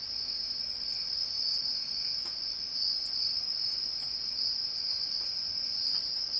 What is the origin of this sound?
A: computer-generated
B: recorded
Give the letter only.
A